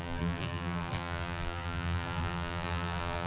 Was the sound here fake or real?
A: fake